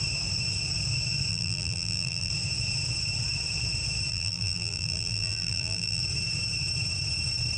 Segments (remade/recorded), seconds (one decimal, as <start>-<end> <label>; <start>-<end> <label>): 0.0-1.3 recorded; 1.3-2.3 remade; 2.3-4.1 recorded; 4.1-6.0 remade; 6.0-7.6 recorded